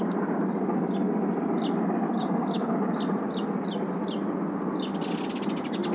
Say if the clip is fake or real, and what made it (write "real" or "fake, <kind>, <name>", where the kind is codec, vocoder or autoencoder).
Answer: real